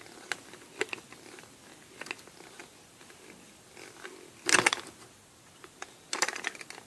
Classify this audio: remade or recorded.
recorded